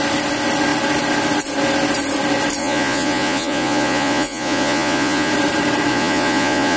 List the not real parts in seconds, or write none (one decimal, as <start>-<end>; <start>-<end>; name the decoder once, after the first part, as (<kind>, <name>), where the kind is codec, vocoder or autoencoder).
2.6-5.3 (vocoder, Vocos); 5.9-6.8